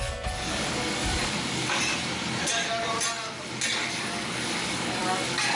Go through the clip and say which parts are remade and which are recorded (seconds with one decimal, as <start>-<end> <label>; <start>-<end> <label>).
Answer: 0.0-1.9 remade; 1.9-3.9 recorded; 3.9-5.6 remade